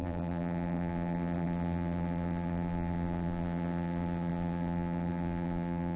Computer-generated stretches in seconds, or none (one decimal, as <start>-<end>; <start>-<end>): 0.0-6.0